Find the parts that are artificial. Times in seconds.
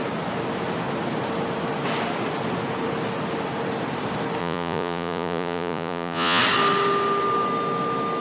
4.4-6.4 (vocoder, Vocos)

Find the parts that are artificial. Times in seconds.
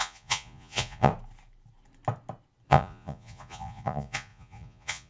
0.0-1.1 (vocoder, Vocos); 2.7-5.1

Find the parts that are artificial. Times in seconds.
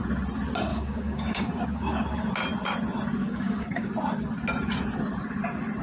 0.7-2.3 (codec, DAC); 3.2-3.9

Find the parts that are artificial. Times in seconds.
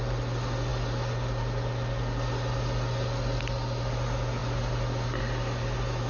none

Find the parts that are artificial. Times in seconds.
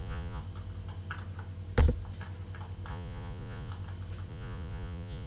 0.0-0.4 (vocoder, Vocos); 2.9-3.7; 4.3-5.3